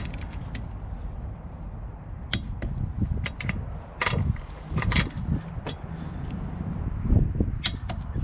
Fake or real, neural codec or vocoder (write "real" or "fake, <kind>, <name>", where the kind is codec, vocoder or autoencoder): real